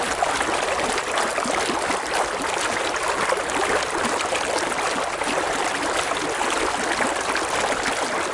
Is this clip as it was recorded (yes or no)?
yes